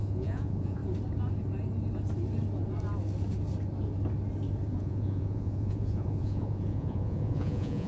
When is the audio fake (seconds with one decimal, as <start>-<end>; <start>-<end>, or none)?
0.0-0.8; 4.7-7.9